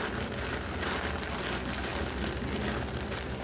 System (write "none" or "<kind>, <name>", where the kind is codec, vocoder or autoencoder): none